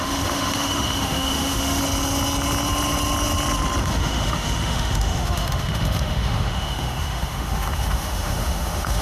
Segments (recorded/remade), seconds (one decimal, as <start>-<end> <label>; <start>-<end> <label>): 0.0-1.8 remade; 1.8-3.8 recorded; 3.8-9.0 remade